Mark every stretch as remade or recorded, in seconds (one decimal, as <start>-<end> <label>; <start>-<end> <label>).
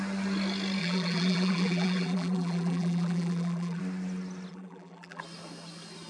0.0-0.8 recorded; 0.8-3.8 remade; 3.8-4.5 recorded; 4.5-5.2 remade; 5.2-6.1 recorded